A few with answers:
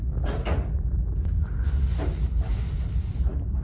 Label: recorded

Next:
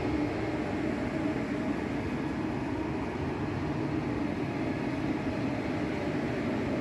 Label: recorded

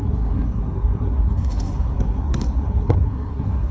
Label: remade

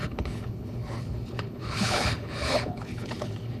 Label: remade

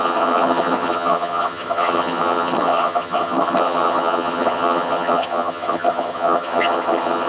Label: remade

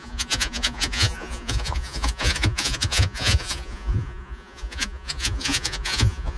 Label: remade